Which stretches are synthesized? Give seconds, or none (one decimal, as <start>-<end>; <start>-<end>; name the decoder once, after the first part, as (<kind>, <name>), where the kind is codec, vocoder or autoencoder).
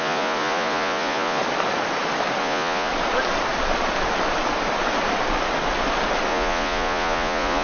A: 0.0-1.4 (vocoder, Vocos); 2.4-2.9; 6.3-7.6